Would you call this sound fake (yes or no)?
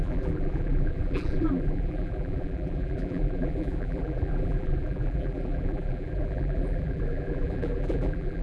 yes